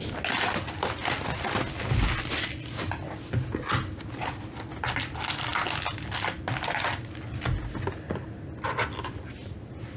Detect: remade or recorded recorded